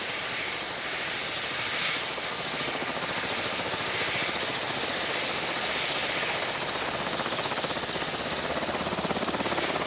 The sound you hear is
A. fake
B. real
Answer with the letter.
B